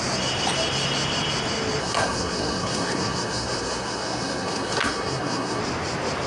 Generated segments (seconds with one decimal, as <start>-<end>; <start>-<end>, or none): 1.8-5.6